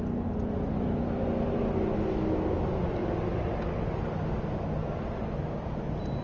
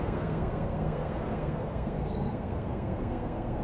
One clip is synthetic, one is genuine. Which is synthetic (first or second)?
second